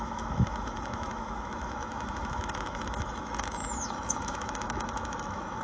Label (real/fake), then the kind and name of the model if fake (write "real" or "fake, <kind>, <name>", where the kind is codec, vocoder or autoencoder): fake, autoencoder, DAC-VAE